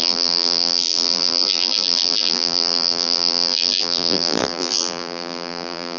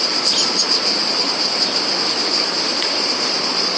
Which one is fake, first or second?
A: first